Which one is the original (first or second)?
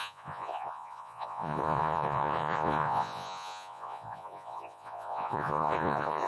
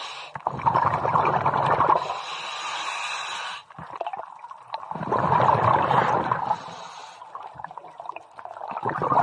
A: second